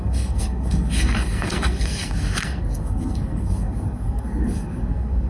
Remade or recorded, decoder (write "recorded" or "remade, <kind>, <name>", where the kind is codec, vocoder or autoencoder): remade, codec, SNAC